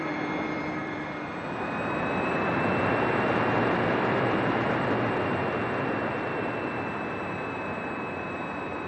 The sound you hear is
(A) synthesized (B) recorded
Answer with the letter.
A